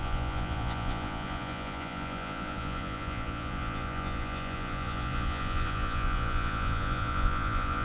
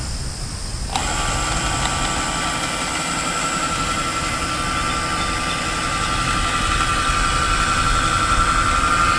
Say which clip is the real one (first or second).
second